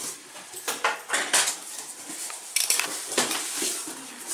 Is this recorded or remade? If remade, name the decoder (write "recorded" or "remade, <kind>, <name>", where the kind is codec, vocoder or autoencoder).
remade, vocoder, BigVGAN v2